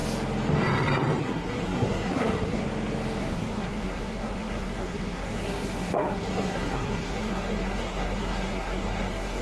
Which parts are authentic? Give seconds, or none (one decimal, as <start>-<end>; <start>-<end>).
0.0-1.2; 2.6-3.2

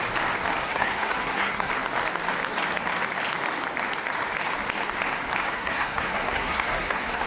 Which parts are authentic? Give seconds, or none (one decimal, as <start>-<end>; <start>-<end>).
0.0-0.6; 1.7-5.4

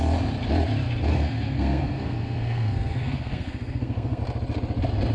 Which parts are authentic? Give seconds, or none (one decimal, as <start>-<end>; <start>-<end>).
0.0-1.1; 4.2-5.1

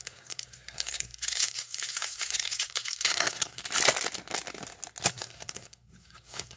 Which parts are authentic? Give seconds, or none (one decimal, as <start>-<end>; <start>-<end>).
3.6-5.1